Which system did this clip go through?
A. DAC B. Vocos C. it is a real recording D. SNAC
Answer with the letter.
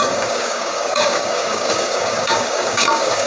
A